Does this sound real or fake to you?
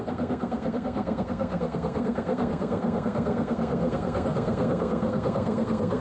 fake